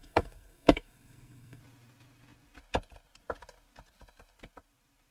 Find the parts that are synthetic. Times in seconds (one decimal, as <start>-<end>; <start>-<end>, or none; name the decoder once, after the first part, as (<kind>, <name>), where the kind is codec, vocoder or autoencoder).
0.0-1.6 (codec, SNAC)